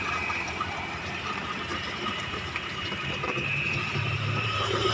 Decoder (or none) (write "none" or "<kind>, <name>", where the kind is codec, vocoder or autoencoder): vocoder, BigVGAN v2